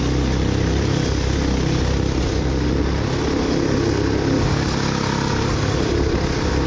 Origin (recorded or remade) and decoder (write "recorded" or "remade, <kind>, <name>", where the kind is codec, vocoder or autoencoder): recorded